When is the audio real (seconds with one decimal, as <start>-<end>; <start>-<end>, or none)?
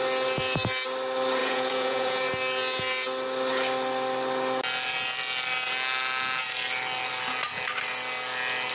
0.0-1.4; 2.3-8.7